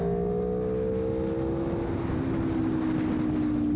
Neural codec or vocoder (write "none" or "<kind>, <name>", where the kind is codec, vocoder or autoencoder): none